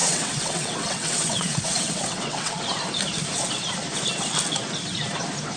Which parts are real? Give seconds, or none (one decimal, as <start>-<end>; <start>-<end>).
2.6-5.6